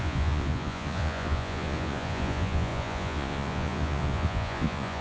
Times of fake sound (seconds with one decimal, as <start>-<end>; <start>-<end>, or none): 0.0-5.0